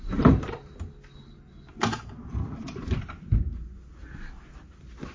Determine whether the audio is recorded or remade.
recorded